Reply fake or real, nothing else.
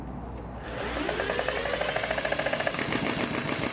real